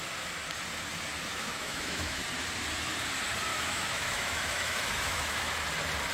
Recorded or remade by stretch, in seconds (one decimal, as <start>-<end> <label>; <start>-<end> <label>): 0.0-1.3 recorded; 1.3-2.2 remade; 2.2-3.5 recorded; 3.5-5.5 remade; 5.5-6.1 recorded